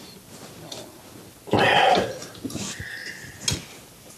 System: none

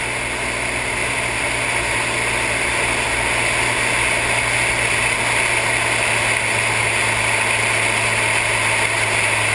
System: none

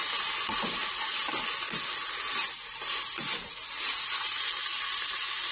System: none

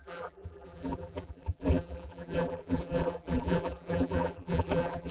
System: vocoder, BigVGAN v2